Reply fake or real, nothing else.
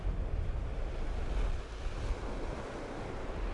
real